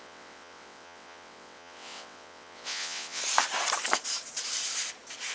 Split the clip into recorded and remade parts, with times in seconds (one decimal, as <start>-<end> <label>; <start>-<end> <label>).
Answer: 0.0-3.2 remade; 3.2-5.3 recorded